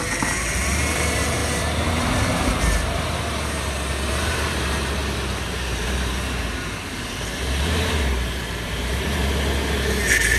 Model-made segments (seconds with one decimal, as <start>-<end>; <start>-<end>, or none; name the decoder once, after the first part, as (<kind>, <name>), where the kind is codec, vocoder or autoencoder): 0.0-1.4 (vocoder, BigVGAN v2); 4.1-5.0; 5.5-9.2